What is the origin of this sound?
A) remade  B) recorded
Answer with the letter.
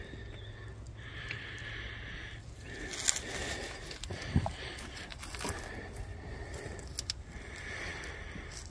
B